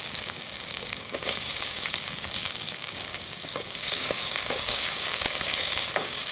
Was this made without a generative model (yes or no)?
no